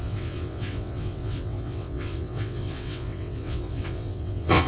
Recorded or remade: remade